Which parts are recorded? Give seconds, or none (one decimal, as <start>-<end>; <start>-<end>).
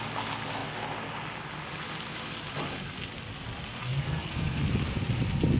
0.0-3.7; 4.6-5.6